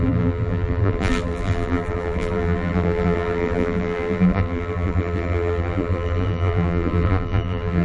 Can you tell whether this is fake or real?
fake